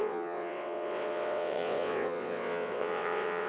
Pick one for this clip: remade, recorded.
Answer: remade